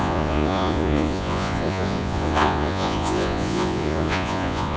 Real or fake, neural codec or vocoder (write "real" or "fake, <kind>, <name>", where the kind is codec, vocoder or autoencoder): fake, vocoder, Vocos